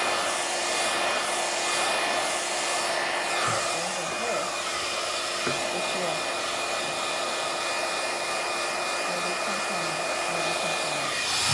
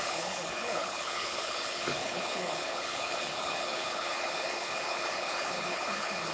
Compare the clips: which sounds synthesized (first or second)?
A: second